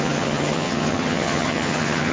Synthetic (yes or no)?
yes